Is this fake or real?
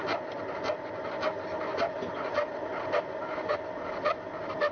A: real